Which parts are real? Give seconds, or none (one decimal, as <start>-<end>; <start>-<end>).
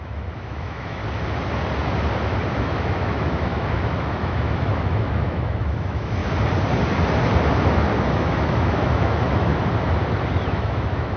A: 1.0-2.5; 6.2-8.1; 9.5-10.3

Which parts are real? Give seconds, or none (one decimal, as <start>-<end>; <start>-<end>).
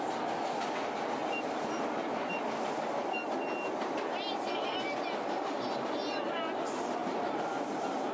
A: 0.0-7.0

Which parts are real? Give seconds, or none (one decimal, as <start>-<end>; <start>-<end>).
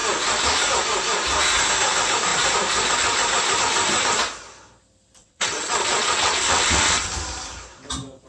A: 0.0-5.2; 7.1-8.3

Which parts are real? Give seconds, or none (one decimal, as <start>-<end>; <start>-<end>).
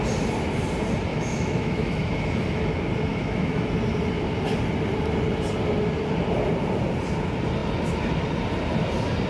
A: 0.0-1.1; 2.7-3.1; 3.7-9.3